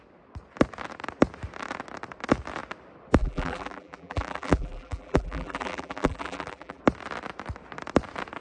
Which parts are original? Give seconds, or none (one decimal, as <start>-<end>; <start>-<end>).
0.0-3.2; 6.8-8.4